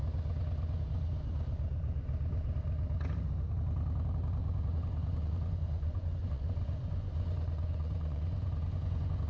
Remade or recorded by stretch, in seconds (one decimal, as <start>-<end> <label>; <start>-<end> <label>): 0.0-4.4 recorded; 4.4-9.3 remade